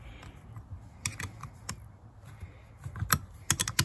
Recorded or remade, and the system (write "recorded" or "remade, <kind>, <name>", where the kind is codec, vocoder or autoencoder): recorded